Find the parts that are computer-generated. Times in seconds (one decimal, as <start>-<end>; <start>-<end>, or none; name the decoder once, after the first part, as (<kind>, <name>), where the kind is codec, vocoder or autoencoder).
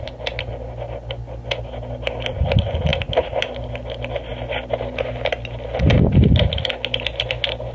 none